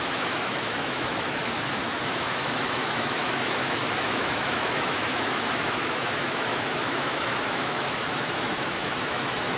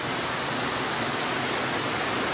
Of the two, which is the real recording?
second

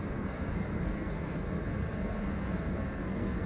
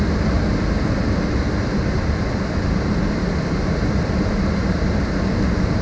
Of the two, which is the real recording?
second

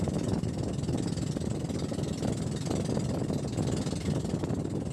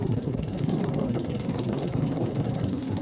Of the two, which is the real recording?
first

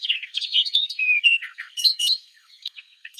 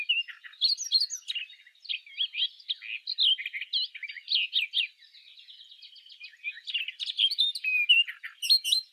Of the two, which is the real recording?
second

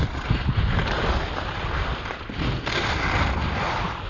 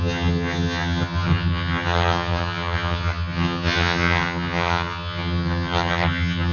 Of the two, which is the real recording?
first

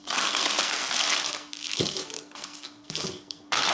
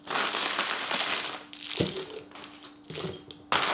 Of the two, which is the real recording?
second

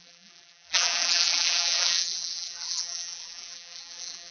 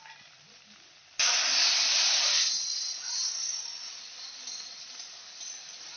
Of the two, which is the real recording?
second